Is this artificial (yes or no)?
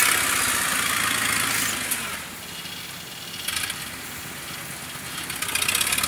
no